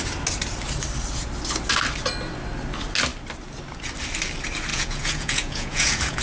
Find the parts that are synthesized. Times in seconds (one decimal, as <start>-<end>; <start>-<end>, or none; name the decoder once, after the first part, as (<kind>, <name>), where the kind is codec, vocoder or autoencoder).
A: 4.7-6.2 (vocoder, Vocos)